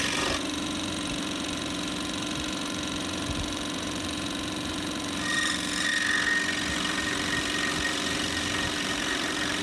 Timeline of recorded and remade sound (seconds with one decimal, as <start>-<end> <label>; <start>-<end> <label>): 0.0-5.9 remade; 5.9-6.7 recorded; 6.7-9.6 remade